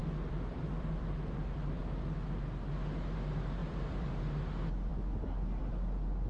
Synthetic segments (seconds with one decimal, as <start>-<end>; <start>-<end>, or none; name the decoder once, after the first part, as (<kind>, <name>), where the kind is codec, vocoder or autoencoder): 0.0-1.8 (vocoder, BigVGAN v2); 3.6-4.1